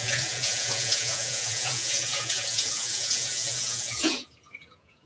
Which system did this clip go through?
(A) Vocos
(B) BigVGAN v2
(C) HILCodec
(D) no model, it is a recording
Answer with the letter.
A